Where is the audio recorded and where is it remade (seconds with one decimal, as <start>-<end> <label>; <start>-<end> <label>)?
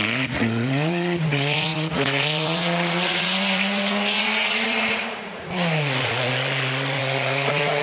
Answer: 0.0-7.8 remade